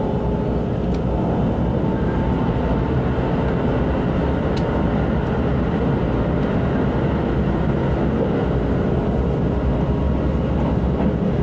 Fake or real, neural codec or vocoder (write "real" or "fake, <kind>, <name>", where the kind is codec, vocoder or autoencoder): real